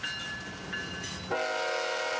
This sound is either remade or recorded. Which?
recorded